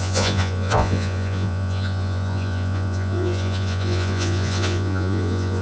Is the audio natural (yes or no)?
no